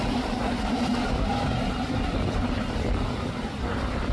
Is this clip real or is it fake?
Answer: real